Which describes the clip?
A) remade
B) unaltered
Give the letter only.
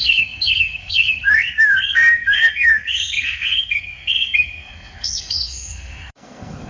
A